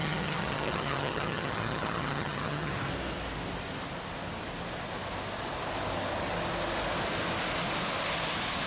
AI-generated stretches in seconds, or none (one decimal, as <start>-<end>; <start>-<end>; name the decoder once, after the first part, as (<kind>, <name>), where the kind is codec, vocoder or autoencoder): 0.0-2.7 (vocoder, HiFi-GAN)